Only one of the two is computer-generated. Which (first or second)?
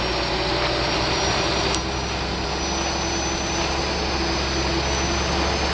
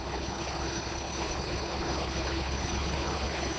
second